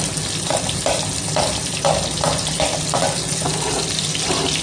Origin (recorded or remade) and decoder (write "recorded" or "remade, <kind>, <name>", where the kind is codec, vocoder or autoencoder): recorded